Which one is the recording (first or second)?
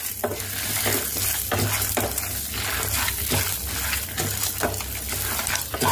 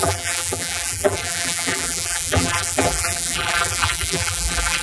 first